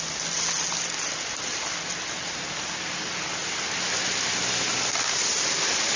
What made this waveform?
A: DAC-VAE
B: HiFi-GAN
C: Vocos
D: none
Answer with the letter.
D